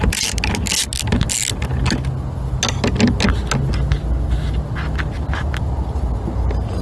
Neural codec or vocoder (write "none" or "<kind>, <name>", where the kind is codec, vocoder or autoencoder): none